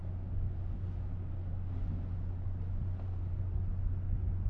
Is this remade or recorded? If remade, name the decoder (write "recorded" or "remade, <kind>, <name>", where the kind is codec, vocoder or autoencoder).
recorded